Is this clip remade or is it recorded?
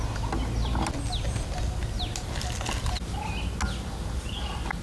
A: recorded